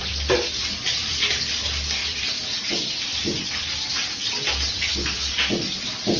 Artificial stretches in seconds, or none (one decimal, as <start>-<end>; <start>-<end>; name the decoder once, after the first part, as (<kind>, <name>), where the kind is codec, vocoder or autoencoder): 2.0-3.5 (vocoder, BigVGAN v2)